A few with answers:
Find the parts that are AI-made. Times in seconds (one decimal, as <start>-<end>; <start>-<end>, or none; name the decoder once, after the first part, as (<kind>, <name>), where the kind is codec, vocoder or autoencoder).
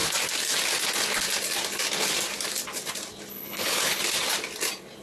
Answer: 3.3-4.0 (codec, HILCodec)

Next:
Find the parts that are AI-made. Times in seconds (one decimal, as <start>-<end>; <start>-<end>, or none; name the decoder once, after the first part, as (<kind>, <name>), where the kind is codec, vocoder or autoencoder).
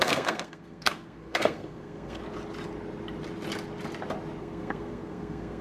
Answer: 0.0-2.2 (codec, SNAC); 4.4-5.6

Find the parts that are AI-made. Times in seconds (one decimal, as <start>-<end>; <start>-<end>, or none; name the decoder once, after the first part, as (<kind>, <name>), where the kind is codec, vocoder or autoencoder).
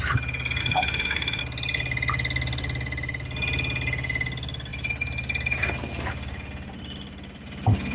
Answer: 0.6-1.4 (autoencoder, DAC-VAE)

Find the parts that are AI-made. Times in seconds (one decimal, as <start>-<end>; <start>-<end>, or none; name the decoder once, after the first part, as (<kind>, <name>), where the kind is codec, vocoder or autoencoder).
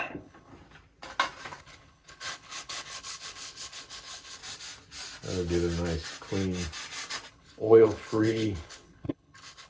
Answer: 0.0-0.5 (codec, HILCodec); 1.6-4.4; 7.3-9.7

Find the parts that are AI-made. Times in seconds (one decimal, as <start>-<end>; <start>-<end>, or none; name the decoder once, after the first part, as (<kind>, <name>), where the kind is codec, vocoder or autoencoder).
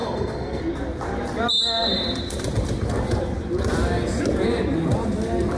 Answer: 0.0-0.6 (codec, SNAC)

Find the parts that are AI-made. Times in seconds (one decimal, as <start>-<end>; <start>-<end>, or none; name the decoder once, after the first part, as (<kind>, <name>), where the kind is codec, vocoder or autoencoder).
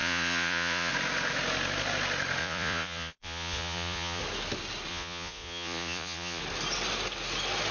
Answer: 0.0-0.9 (vocoder, Vocos); 2.4-4.2; 4.9-6.4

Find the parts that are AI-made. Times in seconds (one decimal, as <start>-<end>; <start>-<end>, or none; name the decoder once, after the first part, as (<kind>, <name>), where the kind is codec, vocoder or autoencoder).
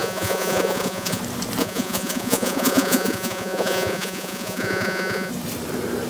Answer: 0.0-1.2 (vocoder, Vocos); 1.6-5.3